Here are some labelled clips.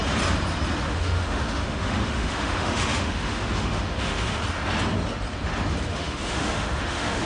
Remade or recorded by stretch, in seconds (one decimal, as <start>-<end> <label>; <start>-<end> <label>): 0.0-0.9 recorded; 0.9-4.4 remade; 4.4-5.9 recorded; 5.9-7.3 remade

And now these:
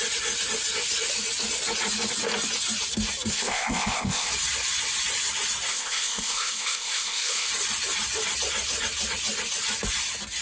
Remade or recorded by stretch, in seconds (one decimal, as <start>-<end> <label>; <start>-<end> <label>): 0.0-3.3 recorded; 3.3-4.3 remade; 4.3-5.7 recorded; 5.7-7.5 remade; 7.5-10.4 recorded

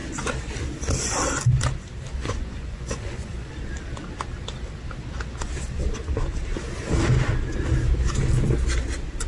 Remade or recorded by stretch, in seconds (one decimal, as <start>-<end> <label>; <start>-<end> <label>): 0.0-2.2 recorded; 2.2-3.5 remade; 3.5-9.3 recorded